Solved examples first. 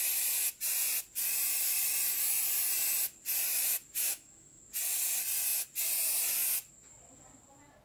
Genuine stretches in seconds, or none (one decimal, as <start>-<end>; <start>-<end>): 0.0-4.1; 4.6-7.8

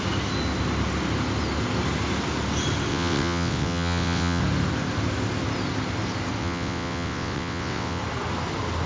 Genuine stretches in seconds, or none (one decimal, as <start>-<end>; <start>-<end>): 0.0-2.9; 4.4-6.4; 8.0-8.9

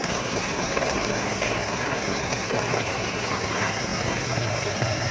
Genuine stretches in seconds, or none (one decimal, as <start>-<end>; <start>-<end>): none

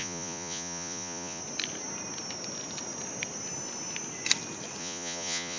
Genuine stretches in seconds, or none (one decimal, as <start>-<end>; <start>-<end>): 1.4-4.8